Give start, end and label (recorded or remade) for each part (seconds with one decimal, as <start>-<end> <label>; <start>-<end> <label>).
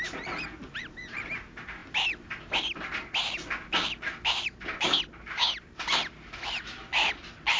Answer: 0.0-7.6 recorded